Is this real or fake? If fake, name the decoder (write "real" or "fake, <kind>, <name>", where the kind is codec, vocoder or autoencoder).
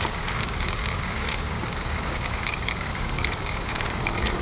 fake, codec, DAC